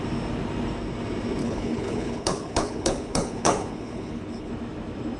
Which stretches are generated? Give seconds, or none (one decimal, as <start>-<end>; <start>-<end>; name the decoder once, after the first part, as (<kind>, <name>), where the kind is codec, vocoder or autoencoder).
1.4-4.5 (codec, HILCodec)